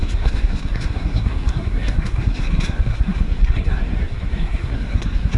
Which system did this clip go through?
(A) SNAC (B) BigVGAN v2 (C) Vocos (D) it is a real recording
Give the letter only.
A